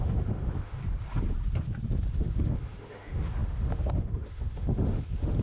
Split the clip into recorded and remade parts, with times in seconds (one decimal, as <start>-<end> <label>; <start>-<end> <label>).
0.0-0.8 remade; 0.8-2.1 recorded; 2.1-5.4 remade